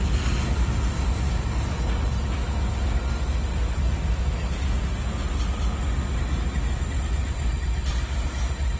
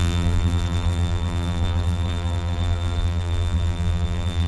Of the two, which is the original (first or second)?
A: first